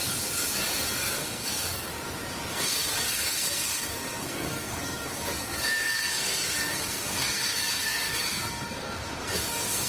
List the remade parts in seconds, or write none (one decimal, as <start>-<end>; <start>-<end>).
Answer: 1.0-1.9; 2.5-9.9